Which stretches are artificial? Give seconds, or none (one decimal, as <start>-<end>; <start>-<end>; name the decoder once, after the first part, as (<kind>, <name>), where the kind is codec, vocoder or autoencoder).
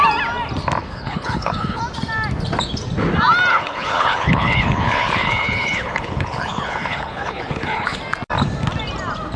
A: 0.8-1.8 (codec, HILCodec); 3.5-8.0